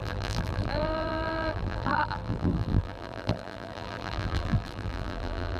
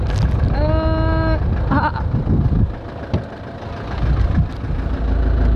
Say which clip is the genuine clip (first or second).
second